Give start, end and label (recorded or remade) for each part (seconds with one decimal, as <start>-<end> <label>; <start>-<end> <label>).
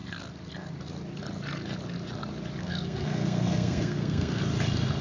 0.0-2.6 recorded; 2.6-4.4 remade; 4.4-5.0 recorded